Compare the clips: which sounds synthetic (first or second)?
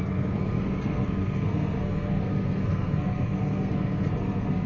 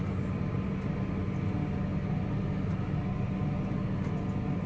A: first